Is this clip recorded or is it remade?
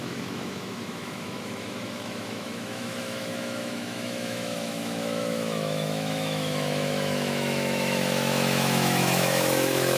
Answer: remade